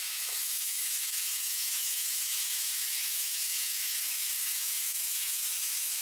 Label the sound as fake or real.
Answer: fake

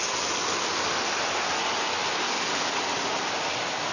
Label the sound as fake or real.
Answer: real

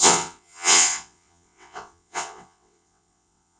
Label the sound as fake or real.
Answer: fake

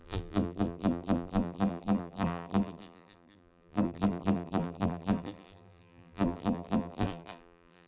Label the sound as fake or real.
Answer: fake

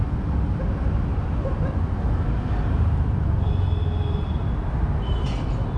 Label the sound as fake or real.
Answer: real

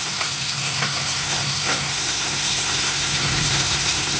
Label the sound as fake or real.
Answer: fake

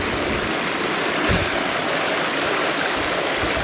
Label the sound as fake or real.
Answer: real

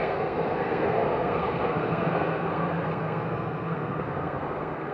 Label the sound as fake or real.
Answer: fake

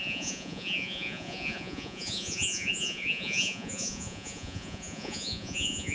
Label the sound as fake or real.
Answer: fake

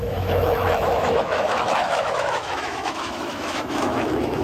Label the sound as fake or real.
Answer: fake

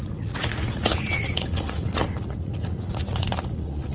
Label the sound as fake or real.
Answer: fake